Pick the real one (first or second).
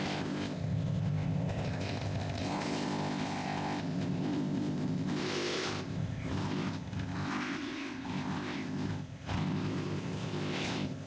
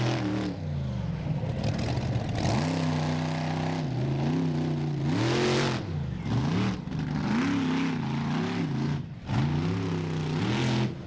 second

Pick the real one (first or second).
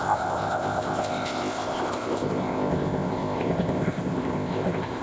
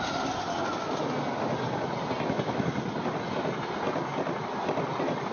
second